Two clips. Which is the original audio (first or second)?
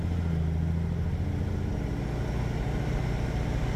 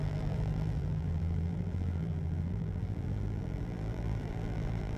first